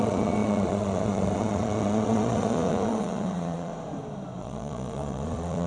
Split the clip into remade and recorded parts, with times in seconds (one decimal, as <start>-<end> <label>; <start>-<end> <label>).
0.0-3.7 remade; 3.7-4.4 recorded; 4.4-5.7 remade